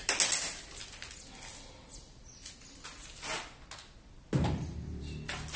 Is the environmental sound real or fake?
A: real